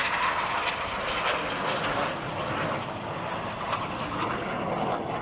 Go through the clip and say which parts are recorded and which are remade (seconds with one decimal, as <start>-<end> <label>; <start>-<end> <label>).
0.0-5.2 recorded

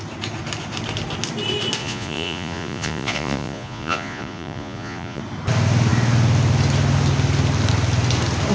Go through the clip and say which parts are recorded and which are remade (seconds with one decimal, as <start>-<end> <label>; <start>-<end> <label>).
0.0-1.8 recorded; 1.8-5.2 remade; 5.2-8.5 recorded

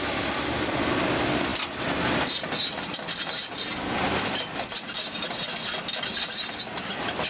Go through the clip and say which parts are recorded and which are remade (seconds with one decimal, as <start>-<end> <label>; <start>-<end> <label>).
0.0-7.3 recorded

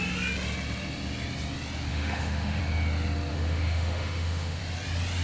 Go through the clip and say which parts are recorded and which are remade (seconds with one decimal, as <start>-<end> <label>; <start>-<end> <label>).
0.0-1.9 recorded; 1.9-2.6 remade; 2.6-3.3 recorded; 3.3-4.6 remade; 4.6-5.2 recorded

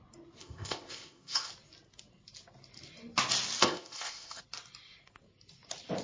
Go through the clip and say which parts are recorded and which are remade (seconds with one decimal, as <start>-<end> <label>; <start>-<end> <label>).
0.0-0.4 recorded; 0.4-1.5 remade; 1.5-3.6 recorded; 3.6-4.4 remade; 4.4-6.0 recorded

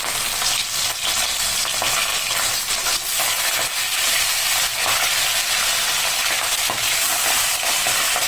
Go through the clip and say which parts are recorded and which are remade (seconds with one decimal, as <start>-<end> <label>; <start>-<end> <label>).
0.0-8.3 recorded